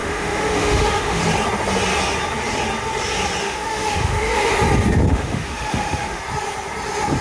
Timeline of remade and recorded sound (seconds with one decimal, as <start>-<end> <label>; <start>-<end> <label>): 0.0-1.2 remade; 1.2-3.4 recorded; 3.4-4.5 remade; 4.5-5.1 recorded; 5.1-6.2 remade; 6.2-7.2 recorded